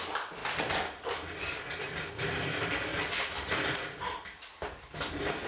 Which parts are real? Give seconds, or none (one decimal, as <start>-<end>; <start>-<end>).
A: 0.4-2.1